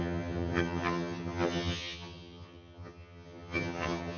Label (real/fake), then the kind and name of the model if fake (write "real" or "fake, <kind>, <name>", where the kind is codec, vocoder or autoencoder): fake, vocoder, HiFi-GAN